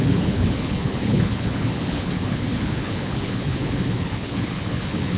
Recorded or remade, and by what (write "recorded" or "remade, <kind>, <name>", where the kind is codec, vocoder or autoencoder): remade, codec, HILCodec